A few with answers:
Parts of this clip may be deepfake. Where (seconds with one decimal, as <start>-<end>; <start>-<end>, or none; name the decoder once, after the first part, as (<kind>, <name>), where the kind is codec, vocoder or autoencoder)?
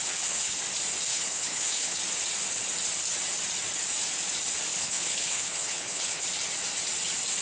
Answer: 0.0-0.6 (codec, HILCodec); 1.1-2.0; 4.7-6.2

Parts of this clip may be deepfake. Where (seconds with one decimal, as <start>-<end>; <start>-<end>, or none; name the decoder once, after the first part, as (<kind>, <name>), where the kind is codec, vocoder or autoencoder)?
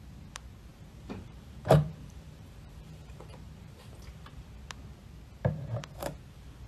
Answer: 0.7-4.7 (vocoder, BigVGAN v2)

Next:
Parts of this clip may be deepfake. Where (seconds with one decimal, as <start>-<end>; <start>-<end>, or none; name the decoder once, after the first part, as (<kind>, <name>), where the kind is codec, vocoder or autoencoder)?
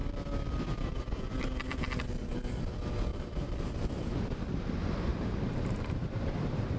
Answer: 3.1-3.8 (vocoder, BigVGAN v2); 5.1-6.8